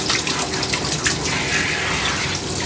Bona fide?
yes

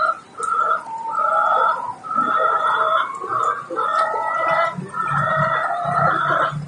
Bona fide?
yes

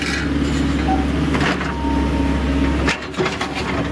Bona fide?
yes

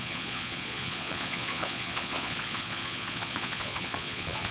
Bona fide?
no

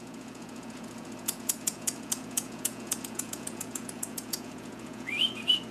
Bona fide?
no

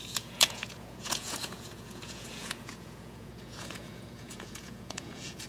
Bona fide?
no